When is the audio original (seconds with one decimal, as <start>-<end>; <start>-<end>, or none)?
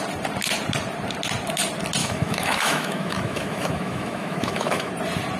0.0-2.0; 4.9-5.4